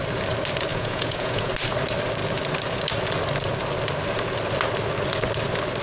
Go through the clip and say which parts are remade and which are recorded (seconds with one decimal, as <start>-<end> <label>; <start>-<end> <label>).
0.0-0.7 recorded; 0.7-1.5 remade; 1.5-5.8 recorded